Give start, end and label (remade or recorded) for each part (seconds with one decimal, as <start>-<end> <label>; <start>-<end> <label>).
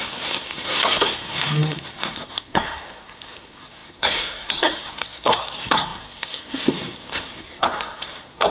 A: 0.0-8.5 remade